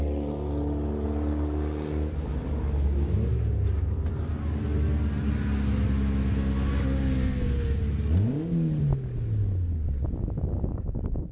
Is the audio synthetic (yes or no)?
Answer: no